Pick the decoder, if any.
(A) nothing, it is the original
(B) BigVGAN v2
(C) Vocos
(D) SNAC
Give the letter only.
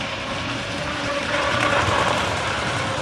B